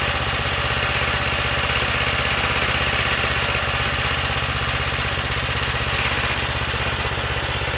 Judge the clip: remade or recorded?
recorded